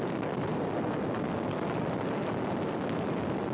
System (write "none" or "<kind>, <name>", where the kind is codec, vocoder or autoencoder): none